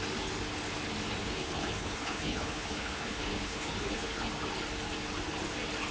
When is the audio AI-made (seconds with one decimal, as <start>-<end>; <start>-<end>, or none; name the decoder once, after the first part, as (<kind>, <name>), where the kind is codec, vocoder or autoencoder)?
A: 1.2-4.3 (codec, HILCodec)